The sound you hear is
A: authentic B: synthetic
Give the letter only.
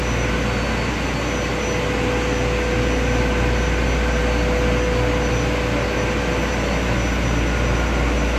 A